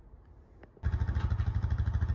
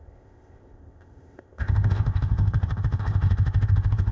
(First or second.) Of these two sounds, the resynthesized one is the second